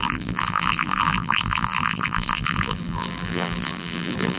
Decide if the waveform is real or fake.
fake